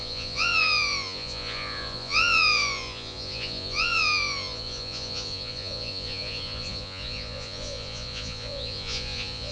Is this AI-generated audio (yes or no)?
yes